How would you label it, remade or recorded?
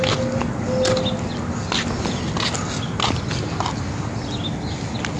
recorded